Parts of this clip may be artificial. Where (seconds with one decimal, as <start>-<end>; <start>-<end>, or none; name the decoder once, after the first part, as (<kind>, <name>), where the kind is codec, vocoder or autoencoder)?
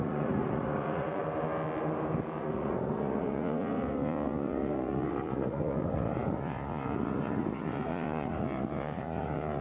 0.0-1.2 (vocoder, Vocos); 2.4-9.6